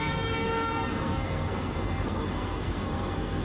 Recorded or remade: remade